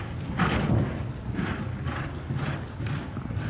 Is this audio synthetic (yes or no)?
no